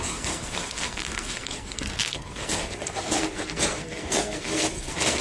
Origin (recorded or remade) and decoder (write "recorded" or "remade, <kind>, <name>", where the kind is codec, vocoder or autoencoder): remade, codec, SNAC